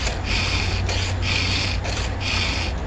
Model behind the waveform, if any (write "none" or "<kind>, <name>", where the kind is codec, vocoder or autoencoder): none